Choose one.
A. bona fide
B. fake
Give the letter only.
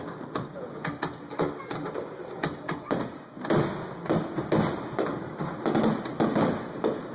A